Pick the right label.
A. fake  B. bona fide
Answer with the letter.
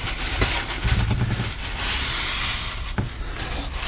B